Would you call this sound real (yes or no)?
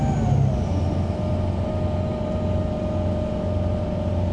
yes